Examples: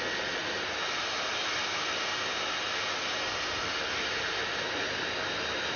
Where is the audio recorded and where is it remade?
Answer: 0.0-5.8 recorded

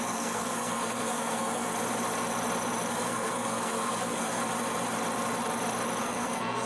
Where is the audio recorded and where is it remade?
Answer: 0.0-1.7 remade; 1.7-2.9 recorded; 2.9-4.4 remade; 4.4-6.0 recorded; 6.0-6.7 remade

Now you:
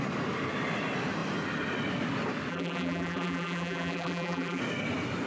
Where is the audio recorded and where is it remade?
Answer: 0.0-2.5 recorded; 2.5-4.6 remade; 4.6-5.3 recorded